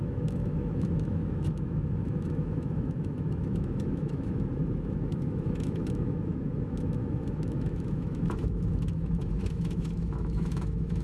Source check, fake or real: fake